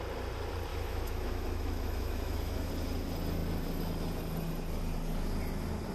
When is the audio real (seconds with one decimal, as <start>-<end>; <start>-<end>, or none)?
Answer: 0.0-0.7; 2.7-5.9